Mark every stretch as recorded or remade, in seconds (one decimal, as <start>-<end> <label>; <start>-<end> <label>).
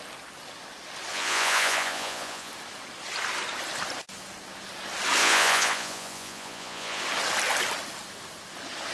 0.0-1.1 recorded; 1.1-2.5 remade; 2.5-5.2 recorded; 5.2-7.0 remade; 7.0-8.9 recorded